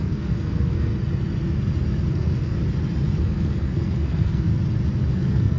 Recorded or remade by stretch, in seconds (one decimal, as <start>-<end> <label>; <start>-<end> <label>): 0.0-0.9 remade; 0.9-2.1 recorded; 2.1-2.6 remade; 2.6-3.2 recorded; 3.2-4.5 remade; 4.5-5.1 recorded; 5.1-5.6 remade